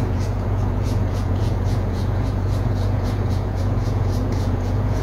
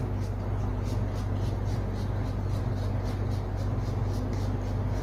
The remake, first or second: first